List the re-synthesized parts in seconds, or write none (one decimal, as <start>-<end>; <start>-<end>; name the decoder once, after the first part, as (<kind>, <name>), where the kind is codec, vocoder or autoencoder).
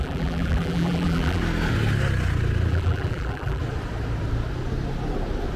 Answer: 0.0-1.4 (vocoder, BigVGAN v2); 2.7-3.6